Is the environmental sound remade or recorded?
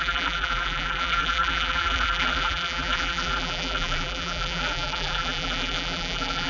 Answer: remade